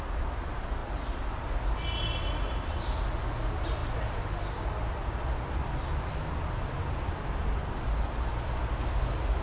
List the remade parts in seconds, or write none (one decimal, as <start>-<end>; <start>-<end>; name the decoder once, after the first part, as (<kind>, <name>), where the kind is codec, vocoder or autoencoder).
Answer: none